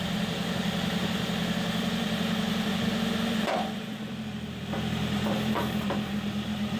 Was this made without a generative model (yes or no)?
no